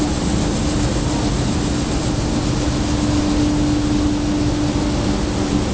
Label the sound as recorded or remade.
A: recorded